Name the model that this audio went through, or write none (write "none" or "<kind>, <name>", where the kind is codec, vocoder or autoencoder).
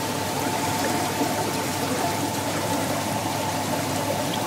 vocoder, BigVGAN v2